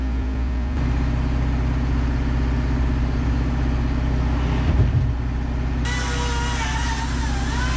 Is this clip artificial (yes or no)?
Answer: no